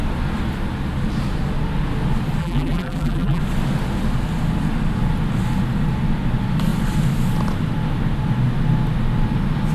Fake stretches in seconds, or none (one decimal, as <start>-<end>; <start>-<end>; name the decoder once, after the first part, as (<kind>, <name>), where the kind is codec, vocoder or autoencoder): 2.4-3.4 (vocoder, BigVGAN v2)